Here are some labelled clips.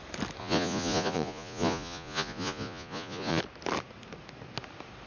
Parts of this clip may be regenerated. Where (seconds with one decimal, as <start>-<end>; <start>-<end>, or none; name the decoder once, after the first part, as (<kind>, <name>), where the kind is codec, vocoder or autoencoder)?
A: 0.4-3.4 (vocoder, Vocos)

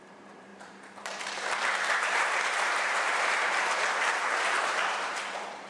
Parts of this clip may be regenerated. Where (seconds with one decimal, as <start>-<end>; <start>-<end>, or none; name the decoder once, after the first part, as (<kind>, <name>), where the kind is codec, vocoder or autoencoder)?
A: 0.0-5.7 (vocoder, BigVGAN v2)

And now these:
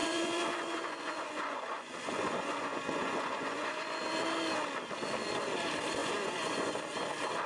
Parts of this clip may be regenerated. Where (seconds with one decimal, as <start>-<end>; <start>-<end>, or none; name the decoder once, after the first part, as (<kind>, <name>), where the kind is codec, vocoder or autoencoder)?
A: 0.0-4.0 (vocoder, Vocos); 6.0-6.8

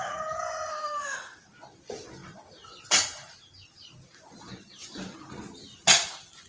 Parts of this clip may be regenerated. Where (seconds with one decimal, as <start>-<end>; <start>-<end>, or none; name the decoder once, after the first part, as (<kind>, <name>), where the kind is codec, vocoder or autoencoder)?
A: 0.7-1.4 (autoencoder, DAC-VAE)

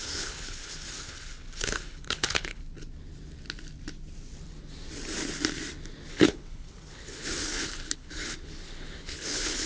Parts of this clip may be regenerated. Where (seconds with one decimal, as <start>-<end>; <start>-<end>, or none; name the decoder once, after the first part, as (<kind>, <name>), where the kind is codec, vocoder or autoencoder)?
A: 0.0-2.6 (codec, HILCodec); 6.1-9.7

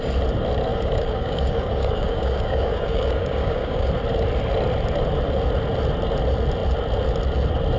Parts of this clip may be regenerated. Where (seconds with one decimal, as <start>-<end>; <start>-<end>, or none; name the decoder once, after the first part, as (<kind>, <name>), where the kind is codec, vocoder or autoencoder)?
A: 0.7-3.9 (codec, DAC)